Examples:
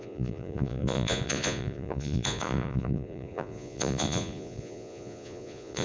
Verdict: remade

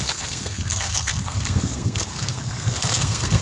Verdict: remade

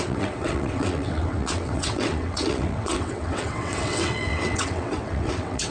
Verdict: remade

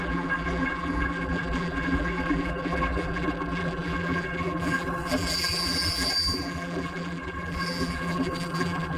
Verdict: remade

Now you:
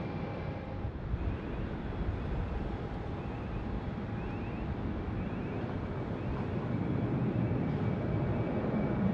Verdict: recorded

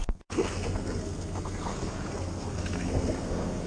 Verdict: remade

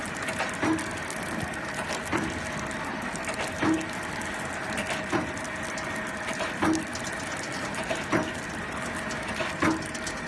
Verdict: recorded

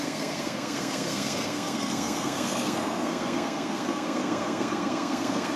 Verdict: remade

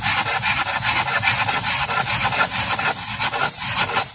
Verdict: recorded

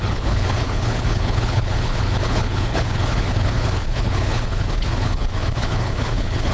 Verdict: remade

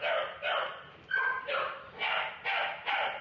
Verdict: recorded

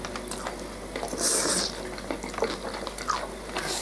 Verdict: recorded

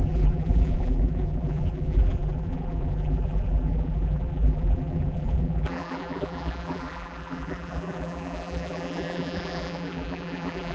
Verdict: remade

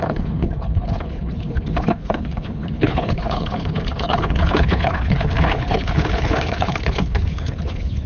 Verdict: remade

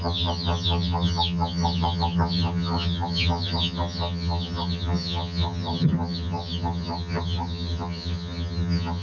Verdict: remade